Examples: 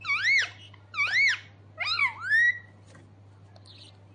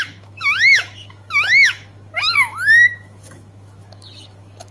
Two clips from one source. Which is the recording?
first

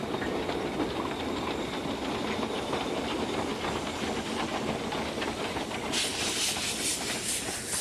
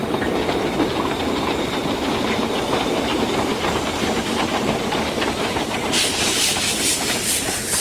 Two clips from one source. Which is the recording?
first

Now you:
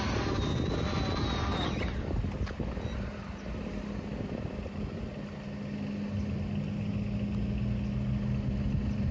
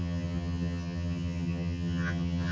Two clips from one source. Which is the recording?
first